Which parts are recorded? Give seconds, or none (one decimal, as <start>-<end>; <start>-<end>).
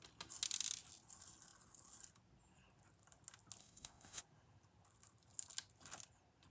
0.0-3.6; 4.2-6.5